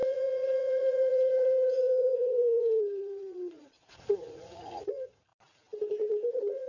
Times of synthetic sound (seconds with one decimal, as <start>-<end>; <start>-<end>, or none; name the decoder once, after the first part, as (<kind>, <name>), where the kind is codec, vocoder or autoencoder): 0.0-5.3 (vocoder, Vocos); 6.3-6.7